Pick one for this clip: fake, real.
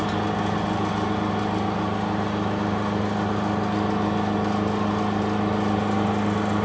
real